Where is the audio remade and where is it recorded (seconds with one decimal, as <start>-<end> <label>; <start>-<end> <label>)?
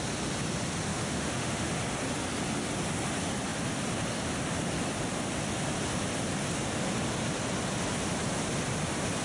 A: 0.0-0.9 recorded; 0.9-1.7 remade; 1.7-9.2 recorded